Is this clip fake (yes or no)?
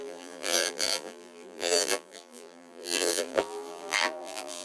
yes